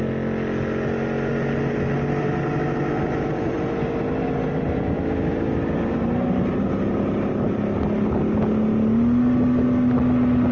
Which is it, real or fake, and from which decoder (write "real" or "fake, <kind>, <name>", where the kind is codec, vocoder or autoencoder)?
real